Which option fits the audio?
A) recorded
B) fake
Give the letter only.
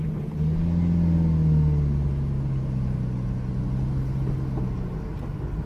A